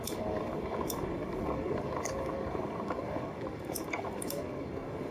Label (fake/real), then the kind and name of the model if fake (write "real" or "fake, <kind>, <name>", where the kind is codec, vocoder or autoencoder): fake, codec, DAC